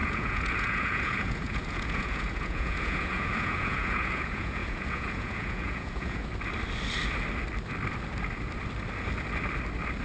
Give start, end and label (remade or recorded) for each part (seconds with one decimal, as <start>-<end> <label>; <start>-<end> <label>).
0.0-6.3 remade; 6.3-10.0 recorded